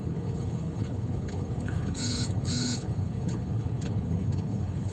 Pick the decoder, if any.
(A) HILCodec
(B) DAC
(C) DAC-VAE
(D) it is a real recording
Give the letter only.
A